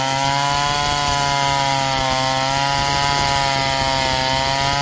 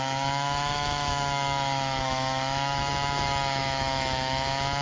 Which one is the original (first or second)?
first